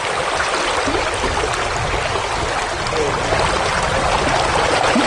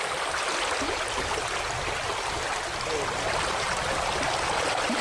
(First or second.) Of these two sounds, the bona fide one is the first